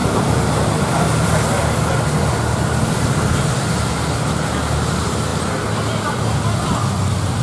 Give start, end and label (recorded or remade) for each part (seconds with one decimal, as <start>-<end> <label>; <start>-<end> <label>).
0.0-7.4 recorded